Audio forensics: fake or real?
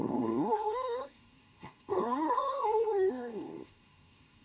fake